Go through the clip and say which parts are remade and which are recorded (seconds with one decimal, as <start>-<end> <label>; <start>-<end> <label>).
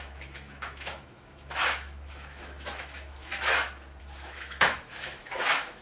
0.0-3.3 remade; 3.3-4.0 recorded; 4.0-5.8 remade